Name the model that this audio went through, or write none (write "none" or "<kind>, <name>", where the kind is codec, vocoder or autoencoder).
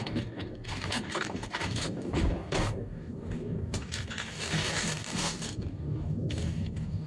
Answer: codec, DAC